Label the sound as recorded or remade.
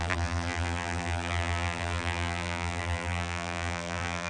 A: remade